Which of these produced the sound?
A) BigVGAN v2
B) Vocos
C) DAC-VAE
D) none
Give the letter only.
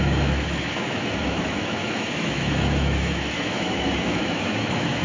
C